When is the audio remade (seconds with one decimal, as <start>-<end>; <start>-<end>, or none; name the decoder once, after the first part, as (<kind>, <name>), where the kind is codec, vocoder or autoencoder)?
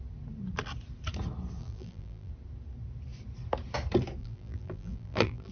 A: 1.6-2.3 (vocoder, BigVGAN v2); 4.2-5.5